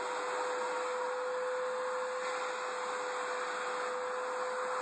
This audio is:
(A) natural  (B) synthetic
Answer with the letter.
A